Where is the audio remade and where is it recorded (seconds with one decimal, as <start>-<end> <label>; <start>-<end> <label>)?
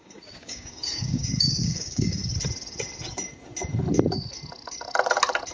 0.0-2.2 remade; 2.2-5.5 recorded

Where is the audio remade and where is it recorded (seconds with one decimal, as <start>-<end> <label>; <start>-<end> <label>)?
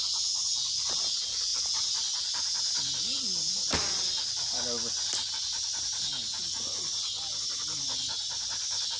0.0-9.0 recorded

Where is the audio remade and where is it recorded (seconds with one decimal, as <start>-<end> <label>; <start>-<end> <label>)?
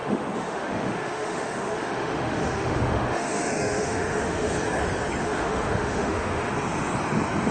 0.0-4.5 remade; 4.5-5.2 recorded; 5.2-6.5 remade; 6.5-7.5 recorded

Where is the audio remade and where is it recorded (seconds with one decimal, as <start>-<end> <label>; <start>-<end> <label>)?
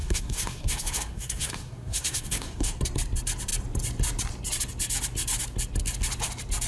0.0-2.8 remade; 2.8-6.7 recorded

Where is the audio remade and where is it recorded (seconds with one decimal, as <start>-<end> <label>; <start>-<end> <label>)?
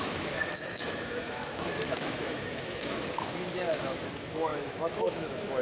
0.0-5.6 remade